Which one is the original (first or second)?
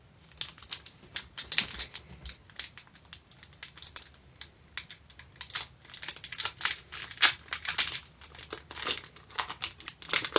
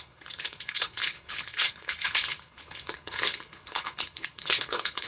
first